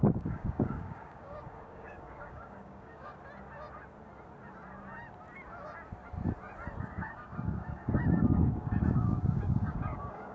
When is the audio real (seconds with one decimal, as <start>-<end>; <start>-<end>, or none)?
3.1-6.8